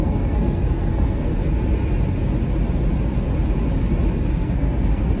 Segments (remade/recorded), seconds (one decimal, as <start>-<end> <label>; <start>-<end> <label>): 0.0-1.3 remade; 1.3-4.3 recorded; 4.3-5.2 remade